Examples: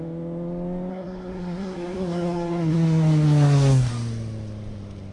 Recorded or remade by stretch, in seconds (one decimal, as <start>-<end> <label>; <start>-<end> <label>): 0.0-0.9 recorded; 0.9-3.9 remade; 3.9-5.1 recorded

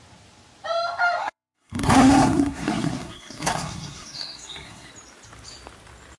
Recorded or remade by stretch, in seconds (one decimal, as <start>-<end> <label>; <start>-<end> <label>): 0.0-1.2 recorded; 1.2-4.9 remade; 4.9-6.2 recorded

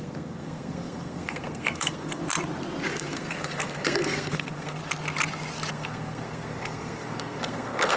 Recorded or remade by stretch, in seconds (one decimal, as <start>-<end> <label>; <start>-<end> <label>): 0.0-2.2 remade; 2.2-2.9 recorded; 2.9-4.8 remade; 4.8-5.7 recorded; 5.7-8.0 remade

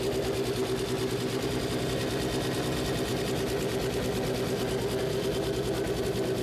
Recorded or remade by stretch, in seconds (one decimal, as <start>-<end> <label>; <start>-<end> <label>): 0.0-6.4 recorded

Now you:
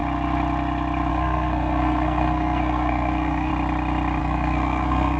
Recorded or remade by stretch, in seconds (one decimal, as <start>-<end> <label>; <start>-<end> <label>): 0.0-1.1 recorded; 1.1-3.5 remade; 3.5-4.2 recorded; 4.2-5.2 remade

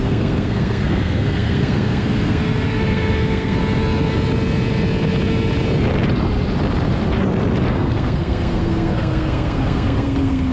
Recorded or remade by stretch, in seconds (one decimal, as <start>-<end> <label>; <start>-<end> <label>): 0.0-3.6 remade; 3.6-7.7 recorded; 7.7-10.5 remade

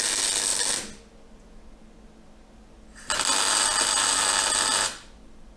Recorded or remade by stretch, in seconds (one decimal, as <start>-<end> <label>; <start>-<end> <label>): 0.0-5.6 recorded